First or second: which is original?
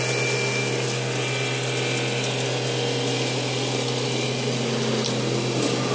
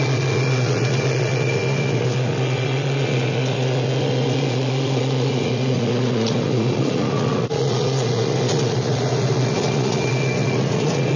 first